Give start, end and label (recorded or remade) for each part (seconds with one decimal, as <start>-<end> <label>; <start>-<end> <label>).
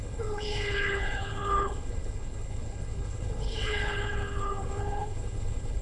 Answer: 0.0-5.8 remade